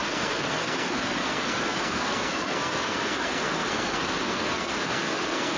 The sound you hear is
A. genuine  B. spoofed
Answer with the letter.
B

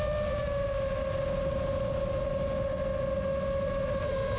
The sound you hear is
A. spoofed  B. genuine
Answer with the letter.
B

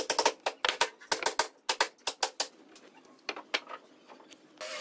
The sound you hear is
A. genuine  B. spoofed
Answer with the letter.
A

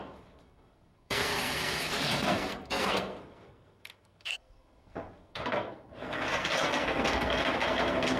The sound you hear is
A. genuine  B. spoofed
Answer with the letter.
B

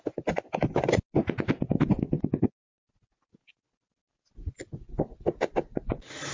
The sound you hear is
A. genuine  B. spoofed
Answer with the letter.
A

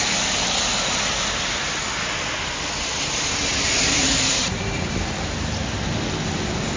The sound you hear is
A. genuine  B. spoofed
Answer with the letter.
A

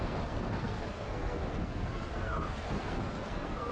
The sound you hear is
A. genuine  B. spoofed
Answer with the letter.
B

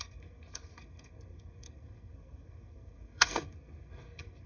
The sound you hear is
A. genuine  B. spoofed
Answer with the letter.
B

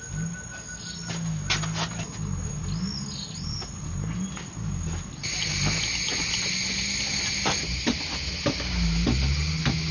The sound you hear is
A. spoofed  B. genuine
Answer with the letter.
B